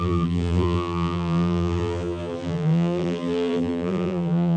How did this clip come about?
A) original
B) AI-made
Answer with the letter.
B